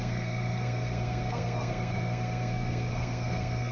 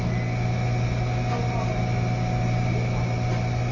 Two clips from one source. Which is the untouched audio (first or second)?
second